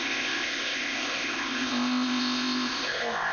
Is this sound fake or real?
fake